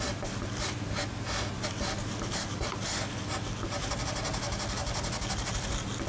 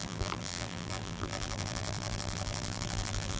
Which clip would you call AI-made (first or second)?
second